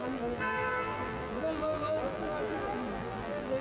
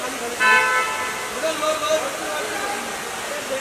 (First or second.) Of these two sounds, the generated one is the first